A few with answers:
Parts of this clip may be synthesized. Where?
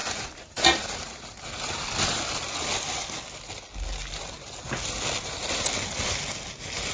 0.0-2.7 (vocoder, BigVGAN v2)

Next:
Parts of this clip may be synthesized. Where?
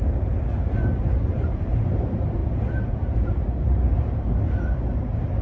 0.8-2.0 (vocoder, BigVGAN v2); 2.4-4.1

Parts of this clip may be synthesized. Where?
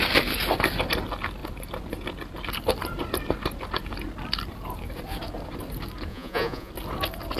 6.1-6.7 (vocoder, Vocos)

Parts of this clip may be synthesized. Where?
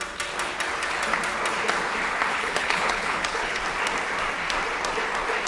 2.3-3.6 (codec, HILCodec)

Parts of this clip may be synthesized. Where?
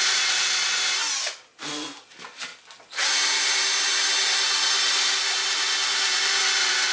0.0-1.0 (vocoder, BigVGAN v2); 2.1-2.5; 5.1-6.9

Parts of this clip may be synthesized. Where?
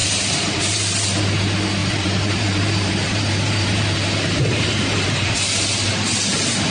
0.0-1.2 (vocoder, BigVGAN v2); 1.8-5.4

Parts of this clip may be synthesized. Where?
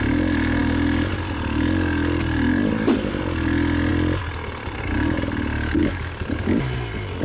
5.8-6.6 (codec, DAC)